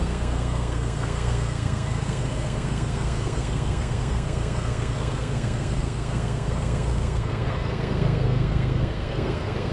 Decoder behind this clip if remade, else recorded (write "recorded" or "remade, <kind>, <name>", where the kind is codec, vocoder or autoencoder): remade, codec, SNAC